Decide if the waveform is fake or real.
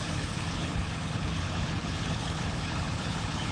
fake